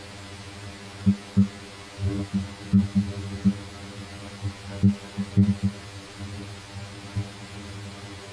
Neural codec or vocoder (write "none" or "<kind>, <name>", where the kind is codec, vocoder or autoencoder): none